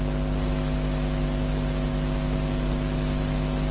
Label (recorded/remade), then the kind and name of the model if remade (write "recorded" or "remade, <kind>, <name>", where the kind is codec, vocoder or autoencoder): recorded